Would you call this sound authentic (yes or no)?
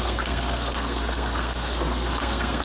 no